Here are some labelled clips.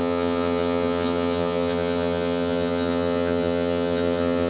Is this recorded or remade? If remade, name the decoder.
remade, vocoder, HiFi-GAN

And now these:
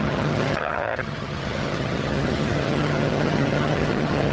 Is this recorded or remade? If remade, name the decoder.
remade, vocoder, HiFi-GAN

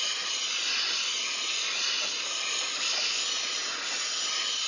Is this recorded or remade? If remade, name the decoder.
recorded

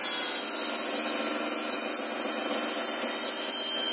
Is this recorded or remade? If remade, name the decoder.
recorded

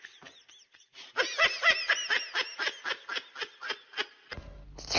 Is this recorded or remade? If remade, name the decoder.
recorded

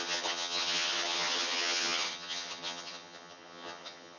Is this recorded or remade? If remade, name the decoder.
remade, vocoder, HiFi-GAN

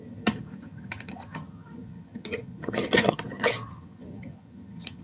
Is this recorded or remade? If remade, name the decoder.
remade, vocoder, HiFi-GAN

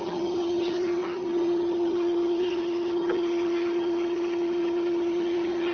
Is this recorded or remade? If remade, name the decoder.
remade, vocoder, HiFi-GAN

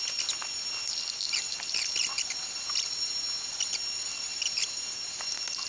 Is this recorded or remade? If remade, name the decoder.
recorded